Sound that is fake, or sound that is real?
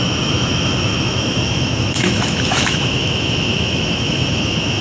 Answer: fake